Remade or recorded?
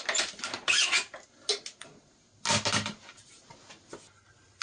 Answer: recorded